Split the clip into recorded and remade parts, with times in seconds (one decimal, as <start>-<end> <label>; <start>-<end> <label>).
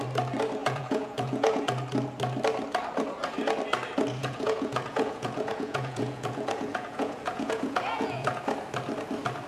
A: 0.0-0.6 recorded; 0.6-1.6 remade; 1.6-4.2 recorded; 4.2-8.4 remade; 8.4-9.5 recorded